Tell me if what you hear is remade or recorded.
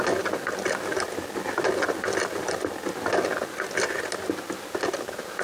recorded